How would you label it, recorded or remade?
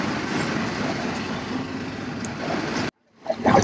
recorded